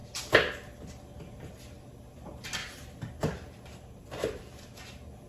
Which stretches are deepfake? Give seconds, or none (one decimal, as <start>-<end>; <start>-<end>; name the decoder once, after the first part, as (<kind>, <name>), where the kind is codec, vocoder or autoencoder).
2.6-4.8 (vocoder, BigVGAN v2)

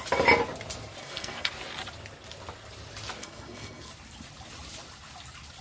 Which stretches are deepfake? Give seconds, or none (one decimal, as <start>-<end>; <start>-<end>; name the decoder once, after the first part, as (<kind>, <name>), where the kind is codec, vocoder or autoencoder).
1.0-1.5 (codec, SNAC); 3.2-3.9

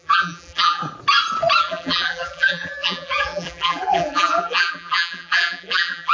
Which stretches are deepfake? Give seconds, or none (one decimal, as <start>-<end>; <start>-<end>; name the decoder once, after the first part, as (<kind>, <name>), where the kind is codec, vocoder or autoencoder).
0.0-0.8 (vocoder, BigVGAN v2); 1.6-6.1

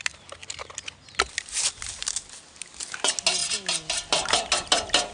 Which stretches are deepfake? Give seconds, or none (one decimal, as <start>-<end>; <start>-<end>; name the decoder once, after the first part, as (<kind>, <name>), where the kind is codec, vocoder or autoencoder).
none

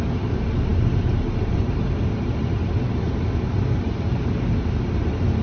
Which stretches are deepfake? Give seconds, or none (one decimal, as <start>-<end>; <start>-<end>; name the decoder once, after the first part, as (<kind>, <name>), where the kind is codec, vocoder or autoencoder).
none

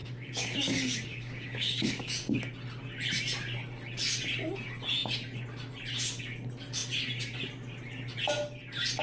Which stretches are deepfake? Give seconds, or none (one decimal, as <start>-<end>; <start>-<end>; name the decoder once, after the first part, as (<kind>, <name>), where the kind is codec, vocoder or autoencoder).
0.0-2.4 (codec, DAC)

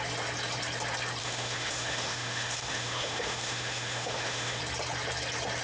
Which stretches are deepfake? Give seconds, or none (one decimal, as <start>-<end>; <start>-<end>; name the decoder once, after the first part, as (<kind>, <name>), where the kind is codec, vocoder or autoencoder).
1.2-4.6 (autoencoder, DAC-VAE)

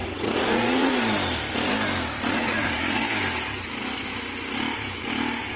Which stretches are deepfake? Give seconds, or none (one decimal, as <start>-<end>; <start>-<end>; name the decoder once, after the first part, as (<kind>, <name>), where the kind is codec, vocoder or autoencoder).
0.0-1.0 (vocoder, Vocos); 2.3-3.0